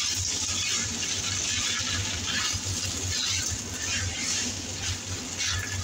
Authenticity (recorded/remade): recorded